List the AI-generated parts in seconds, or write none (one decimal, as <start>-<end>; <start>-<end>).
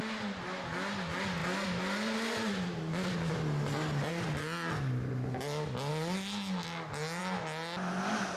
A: none